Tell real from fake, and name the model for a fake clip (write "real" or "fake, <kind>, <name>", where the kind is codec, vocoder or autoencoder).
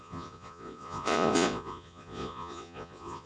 fake, vocoder, Vocos